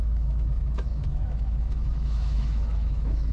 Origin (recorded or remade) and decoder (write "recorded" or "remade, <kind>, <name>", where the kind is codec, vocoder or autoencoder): remade, autoencoder, DAC-VAE